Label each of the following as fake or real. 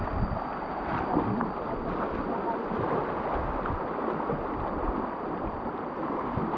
real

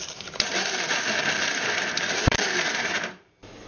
fake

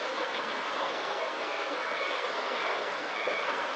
fake